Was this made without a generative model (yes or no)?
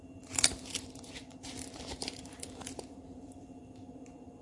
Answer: no